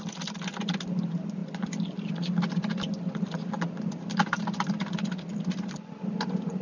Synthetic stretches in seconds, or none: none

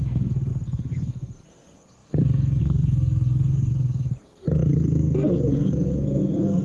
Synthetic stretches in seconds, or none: 0.0-6.6 (codec, SNAC)